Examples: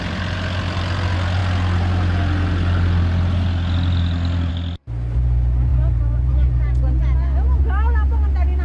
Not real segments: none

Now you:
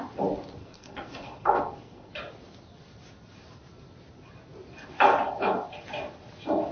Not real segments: 0.6-2.1 (codec, SNAC)

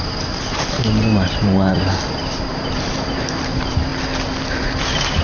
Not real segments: 0.0-1.7 (vocoder, BigVGAN v2); 2.4-3.9; 4.5-5.2

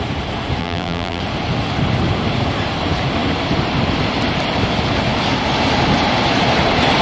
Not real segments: 0.6-1.2 (vocoder, BigVGAN v2)

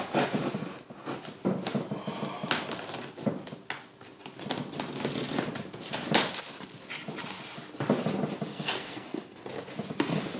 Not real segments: 8.5-9.4 (codec, SNAC)

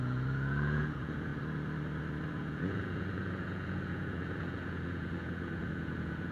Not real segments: 0.0-1.3 (vocoder, Vocos); 2.3-6.3

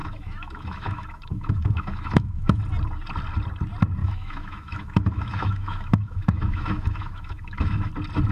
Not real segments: 0.0-2.6 (autoencoder, DAC-VAE); 4.0-7.9

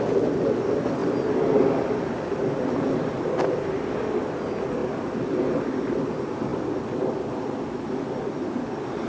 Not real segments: none